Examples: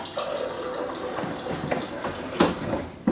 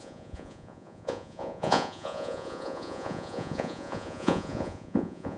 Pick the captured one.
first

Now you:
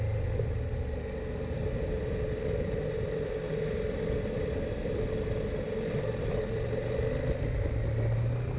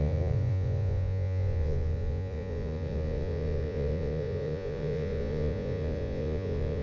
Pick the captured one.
first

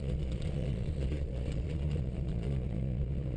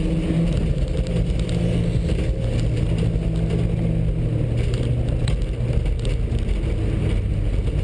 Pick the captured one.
second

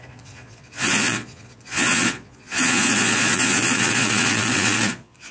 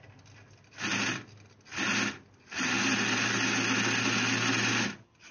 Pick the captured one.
second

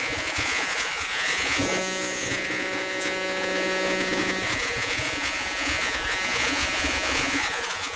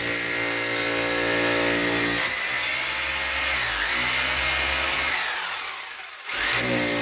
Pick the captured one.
second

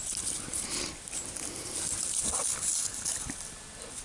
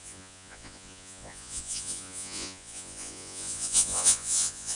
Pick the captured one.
first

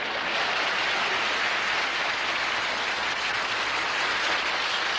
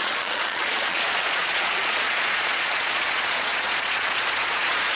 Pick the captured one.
first